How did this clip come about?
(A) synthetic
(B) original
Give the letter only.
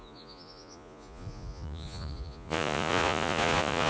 A